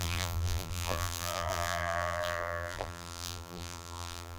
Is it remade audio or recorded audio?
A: remade